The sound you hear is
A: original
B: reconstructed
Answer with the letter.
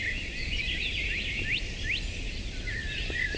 A